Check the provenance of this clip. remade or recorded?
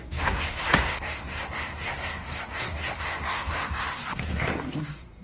remade